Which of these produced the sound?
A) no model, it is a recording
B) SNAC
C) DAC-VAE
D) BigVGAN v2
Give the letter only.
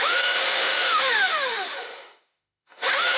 C